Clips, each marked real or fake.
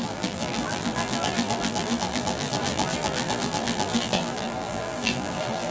fake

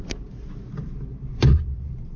fake